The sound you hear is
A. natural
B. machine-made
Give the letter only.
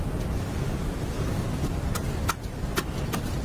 A